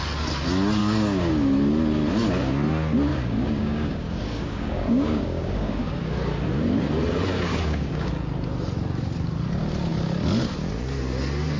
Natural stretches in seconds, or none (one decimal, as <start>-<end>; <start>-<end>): 0.0-0.8; 1.3-3.1; 6.3-7.5; 8.1-11.6